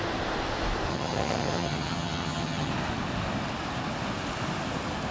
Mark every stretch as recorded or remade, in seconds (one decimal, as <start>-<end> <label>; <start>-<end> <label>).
0.0-0.9 recorded; 0.9-2.7 remade; 2.7-5.1 recorded